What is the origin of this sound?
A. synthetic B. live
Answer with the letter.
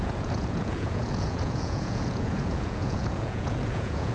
A